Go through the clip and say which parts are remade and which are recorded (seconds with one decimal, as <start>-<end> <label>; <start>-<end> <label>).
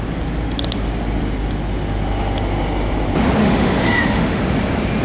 0.0-3.4 recorded; 3.4-4.4 remade; 4.4-5.0 recorded